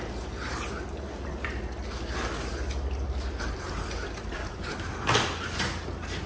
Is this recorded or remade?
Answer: recorded